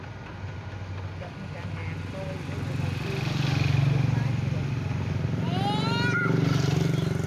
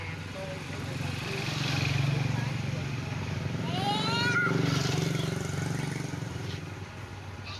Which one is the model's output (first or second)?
second